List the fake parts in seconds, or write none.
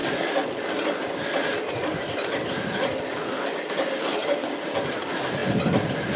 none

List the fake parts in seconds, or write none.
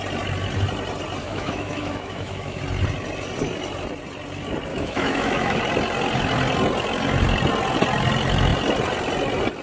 1.2-2.6 (autoencoder, DAC-VAE); 4.7-5.6